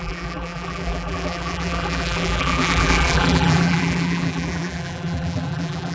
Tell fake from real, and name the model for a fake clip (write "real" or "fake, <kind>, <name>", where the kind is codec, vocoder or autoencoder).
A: fake, vocoder, BigVGAN v2